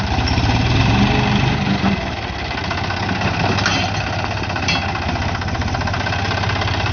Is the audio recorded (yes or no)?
yes